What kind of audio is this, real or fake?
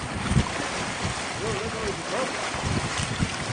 real